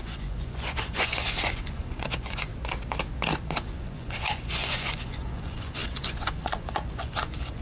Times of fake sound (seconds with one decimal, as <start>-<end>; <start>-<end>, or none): 0.0-2.5; 3.4-7.6